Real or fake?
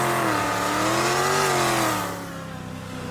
real